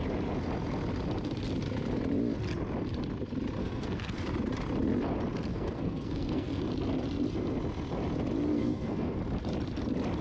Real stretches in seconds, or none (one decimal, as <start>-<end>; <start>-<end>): 0.0-3.6; 4.2-5.5; 6.6-8.5; 9.2-10.2